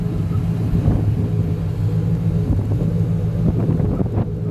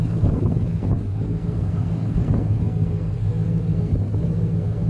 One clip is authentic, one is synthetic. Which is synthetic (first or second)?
second